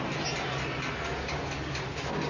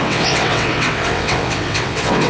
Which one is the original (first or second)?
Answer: first